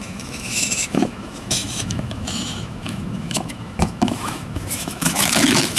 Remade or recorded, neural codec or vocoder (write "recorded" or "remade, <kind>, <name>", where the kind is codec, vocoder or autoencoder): remade, autoencoder, DAC-VAE